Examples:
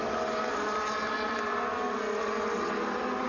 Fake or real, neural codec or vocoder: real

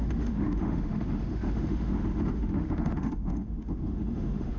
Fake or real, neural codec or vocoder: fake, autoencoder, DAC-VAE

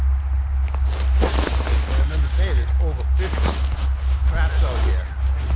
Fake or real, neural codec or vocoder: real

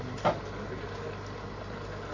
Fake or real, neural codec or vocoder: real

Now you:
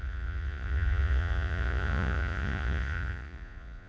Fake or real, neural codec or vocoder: fake, vocoder, Vocos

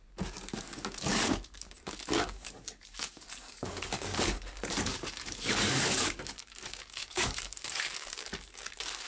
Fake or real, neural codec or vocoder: fake, codec, DAC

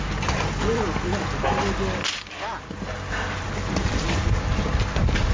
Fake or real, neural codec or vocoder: real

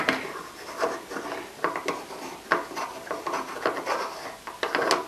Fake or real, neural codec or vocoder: real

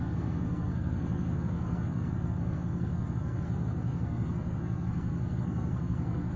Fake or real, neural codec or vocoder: fake, codec, SNAC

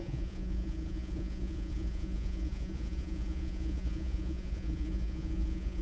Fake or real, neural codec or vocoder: fake, vocoder, Vocos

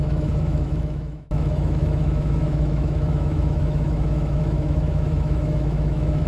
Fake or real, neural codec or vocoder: fake, autoencoder, DAC-VAE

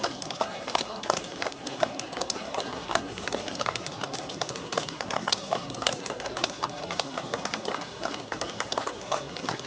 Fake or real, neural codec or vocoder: fake, codec, SNAC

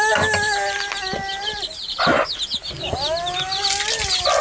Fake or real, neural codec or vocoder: real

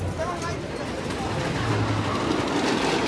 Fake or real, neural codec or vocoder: real